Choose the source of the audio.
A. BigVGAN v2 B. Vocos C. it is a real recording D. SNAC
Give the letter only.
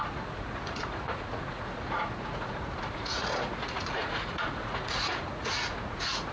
B